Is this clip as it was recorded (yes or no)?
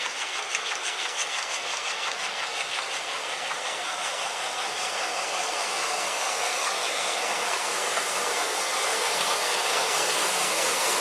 no